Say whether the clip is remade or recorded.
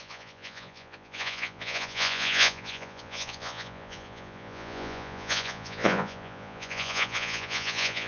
remade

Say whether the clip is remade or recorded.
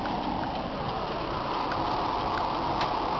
recorded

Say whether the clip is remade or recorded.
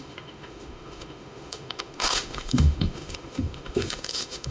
remade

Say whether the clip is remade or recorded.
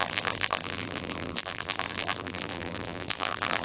remade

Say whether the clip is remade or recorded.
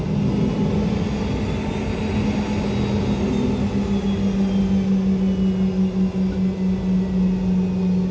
recorded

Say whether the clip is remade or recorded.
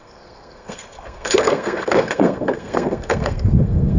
remade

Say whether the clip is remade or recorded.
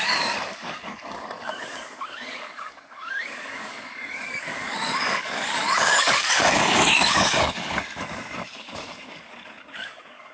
remade